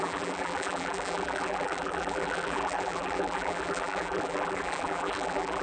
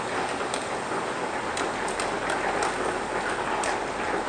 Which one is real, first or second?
second